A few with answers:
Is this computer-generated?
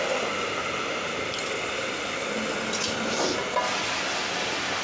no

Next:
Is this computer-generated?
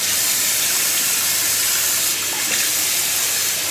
no